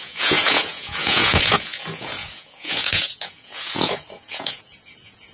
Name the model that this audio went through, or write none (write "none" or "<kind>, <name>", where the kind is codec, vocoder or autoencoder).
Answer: vocoder, Vocos